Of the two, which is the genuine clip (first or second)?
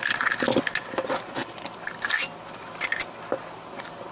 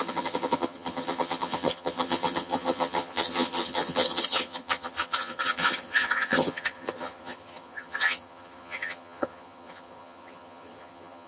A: first